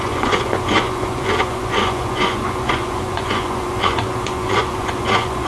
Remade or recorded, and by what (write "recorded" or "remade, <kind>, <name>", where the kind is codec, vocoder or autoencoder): remade, vocoder, Vocos